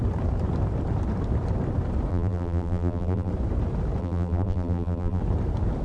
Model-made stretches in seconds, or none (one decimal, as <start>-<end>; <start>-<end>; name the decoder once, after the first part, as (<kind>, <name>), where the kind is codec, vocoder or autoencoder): 2.1-3.3 (vocoder, BigVGAN v2); 4.0-5.2